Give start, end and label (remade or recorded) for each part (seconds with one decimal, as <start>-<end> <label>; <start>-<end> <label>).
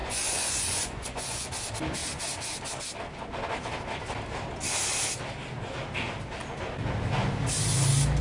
0.0-1.5 remade; 1.5-8.2 recorded